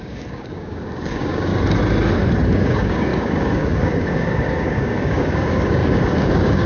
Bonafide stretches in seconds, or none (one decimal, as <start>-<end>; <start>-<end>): 1.5-2.5